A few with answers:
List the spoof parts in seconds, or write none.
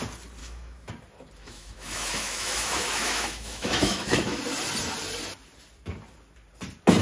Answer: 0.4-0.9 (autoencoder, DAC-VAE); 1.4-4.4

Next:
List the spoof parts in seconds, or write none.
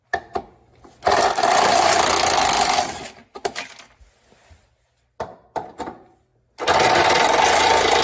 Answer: none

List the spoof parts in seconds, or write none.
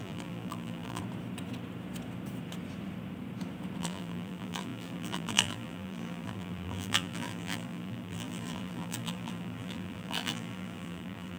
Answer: 0.0-1.0 (vocoder, BigVGAN v2); 3.8-11.4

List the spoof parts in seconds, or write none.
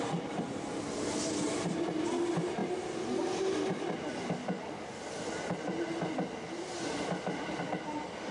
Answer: none